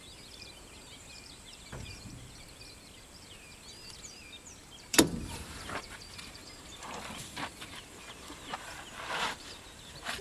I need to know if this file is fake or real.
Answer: fake